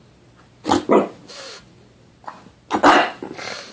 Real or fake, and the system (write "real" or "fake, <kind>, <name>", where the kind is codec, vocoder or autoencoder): real